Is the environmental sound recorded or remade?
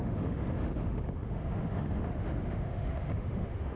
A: remade